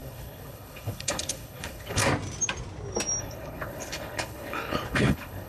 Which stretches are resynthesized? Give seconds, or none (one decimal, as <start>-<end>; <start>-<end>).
0.0-2.0; 3.2-5.5

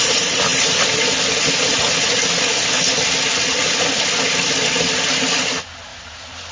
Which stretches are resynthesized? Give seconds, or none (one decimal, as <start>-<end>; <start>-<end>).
none

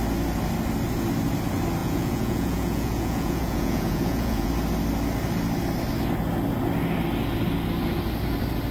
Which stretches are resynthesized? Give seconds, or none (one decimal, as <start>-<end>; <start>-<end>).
1.8-4.5

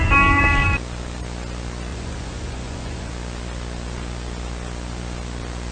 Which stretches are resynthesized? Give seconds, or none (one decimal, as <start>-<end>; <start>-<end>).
1.9-3.1

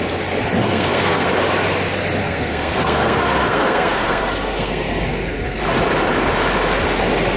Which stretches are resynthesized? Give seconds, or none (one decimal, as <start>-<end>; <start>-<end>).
0.6-1.3; 2.2-5.6

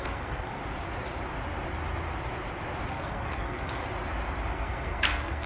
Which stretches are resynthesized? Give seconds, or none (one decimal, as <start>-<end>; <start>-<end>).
0.0-0.6; 2.9-3.8; 4.5-5.5

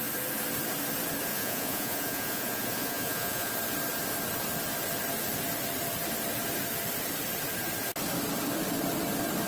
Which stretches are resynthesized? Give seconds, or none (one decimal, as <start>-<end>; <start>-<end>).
1.3-3.5